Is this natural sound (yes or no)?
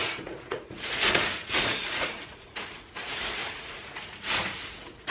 no